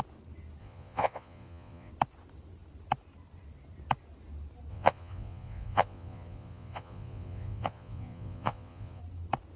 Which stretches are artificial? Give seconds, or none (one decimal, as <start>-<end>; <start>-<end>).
0.6-1.9; 4.7-9.0

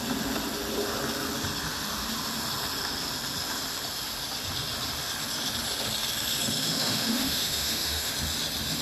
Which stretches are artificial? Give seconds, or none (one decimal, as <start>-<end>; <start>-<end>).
6.6-8.1

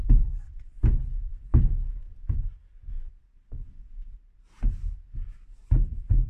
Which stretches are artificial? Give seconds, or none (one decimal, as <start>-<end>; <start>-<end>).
none

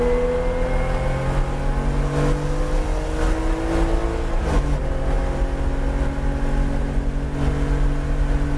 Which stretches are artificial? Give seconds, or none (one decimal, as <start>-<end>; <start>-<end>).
none

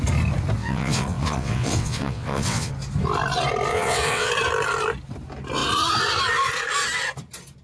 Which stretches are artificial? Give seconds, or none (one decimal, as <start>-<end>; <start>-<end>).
0.6-2.7; 3.7-4.3

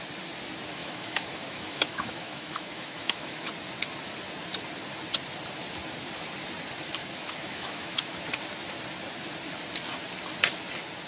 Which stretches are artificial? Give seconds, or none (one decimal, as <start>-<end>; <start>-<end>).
0.8-3.5; 7.0-8.2

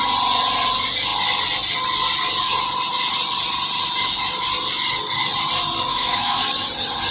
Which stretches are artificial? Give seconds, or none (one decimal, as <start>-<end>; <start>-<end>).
5.9-6.4

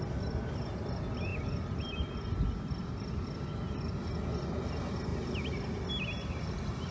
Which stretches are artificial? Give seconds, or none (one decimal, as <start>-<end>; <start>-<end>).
none